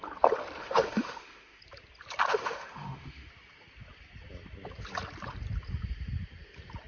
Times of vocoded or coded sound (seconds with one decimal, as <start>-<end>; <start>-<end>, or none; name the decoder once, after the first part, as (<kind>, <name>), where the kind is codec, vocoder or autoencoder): 0.6-1.6 (autoencoder, DAC-VAE); 2.3-3.3